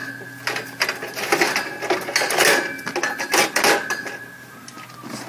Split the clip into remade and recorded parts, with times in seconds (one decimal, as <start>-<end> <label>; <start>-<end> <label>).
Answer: 0.0-5.3 recorded